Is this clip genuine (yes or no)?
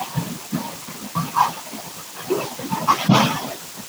yes